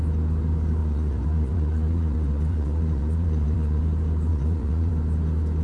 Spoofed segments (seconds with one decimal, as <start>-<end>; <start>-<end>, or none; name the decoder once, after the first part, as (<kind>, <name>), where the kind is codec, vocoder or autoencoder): 0.8-3.8 (vocoder, Vocos); 4.3-4.9